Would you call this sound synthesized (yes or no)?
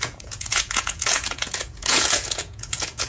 yes